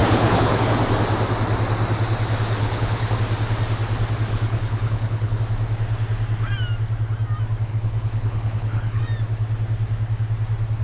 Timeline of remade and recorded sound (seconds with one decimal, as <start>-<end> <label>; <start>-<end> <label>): 0.0-0.7 remade; 0.7-2.6 recorded; 2.6-3.2 remade; 3.2-4.3 recorded; 4.3-5.4 remade; 5.4-7.7 recorded; 7.7-9.0 remade; 9.0-10.8 recorded